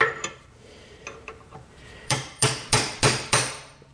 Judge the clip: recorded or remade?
remade